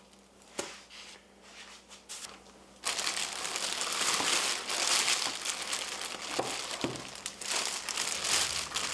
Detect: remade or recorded recorded